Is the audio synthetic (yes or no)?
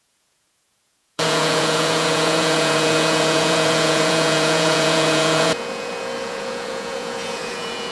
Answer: yes